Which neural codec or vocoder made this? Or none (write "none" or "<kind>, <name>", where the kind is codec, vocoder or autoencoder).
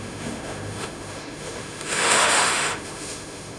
autoencoder, DAC-VAE